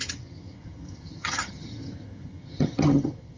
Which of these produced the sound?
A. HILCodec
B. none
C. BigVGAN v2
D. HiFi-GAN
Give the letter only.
D